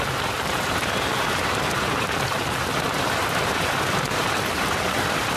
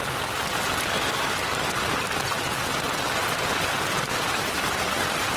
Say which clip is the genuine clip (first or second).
second